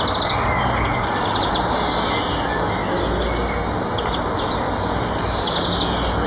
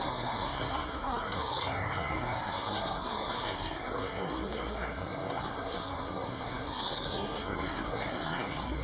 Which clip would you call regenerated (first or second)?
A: second